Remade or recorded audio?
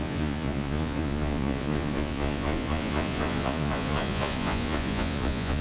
remade